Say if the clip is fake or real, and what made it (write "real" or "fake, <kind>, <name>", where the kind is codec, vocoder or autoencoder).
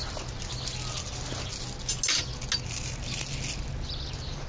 real